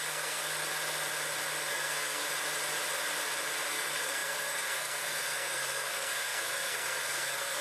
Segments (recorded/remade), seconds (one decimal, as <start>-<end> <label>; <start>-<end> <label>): 0.0-0.4 remade; 0.4-1.7 recorded; 1.7-2.2 remade; 2.2-3.7 recorded; 3.7-7.6 remade